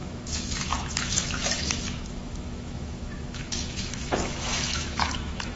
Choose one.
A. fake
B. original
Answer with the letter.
A